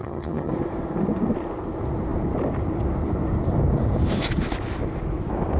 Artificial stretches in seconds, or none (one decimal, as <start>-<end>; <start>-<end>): 0.0-0.5